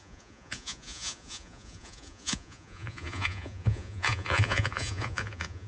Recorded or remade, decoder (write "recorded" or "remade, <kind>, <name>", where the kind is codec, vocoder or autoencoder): remade, vocoder, Vocos